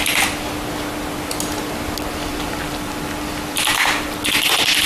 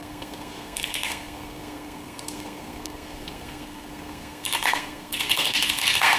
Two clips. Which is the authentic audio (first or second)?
first